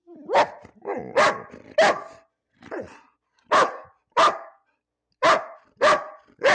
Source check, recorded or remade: recorded